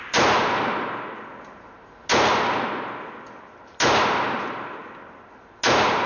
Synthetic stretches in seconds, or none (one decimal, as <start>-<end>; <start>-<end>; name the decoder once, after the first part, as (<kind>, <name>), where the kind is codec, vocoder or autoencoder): none